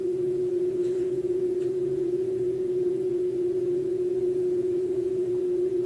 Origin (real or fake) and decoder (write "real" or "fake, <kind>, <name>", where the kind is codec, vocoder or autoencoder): fake, vocoder, Vocos